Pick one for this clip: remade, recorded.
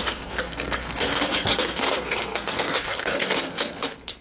remade